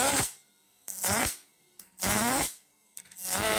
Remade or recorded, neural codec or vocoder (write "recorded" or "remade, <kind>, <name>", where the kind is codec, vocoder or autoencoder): remade, codec, SNAC